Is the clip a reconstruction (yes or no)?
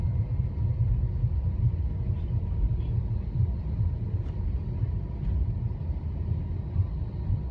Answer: no